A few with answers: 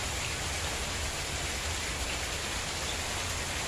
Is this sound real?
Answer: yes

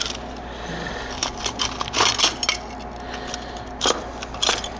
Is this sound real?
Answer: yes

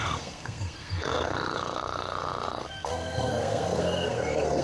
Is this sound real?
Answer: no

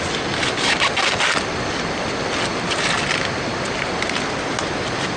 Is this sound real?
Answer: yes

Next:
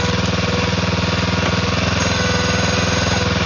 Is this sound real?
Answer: yes